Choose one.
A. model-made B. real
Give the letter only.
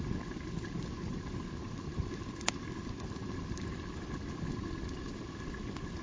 B